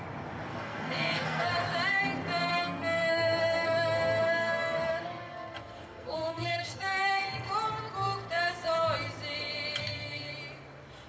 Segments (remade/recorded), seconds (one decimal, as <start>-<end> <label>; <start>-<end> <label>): 0.0-0.5 recorded; 0.5-1.5 remade; 1.5-2.5 recorded; 2.5-7.5 remade; 7.5-9.8 recorded; 9.8-10.3 remade; 10.3-11.1 recorded